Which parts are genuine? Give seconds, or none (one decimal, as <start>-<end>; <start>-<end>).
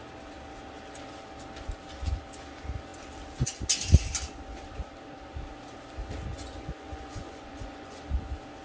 0.0-6.3; 8.0-8.6